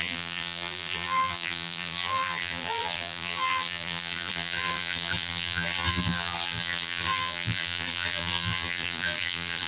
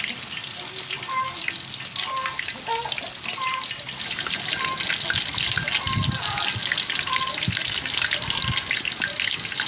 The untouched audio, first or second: second